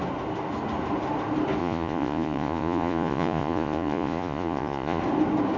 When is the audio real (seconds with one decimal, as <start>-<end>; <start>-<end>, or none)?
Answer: 0.0-1.6; 5.0-5.6

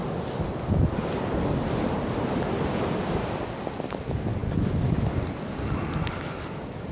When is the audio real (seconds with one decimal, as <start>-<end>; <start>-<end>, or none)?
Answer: 0.0-6.9